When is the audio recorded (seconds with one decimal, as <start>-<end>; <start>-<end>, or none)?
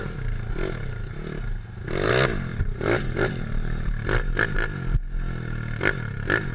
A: 0.0-2.5; 3.9-6.5